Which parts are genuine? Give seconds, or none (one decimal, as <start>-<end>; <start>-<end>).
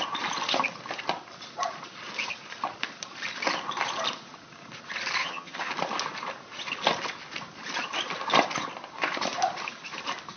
0.0-5.2; 5.7-10.4